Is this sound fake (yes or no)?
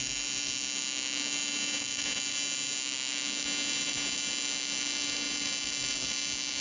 no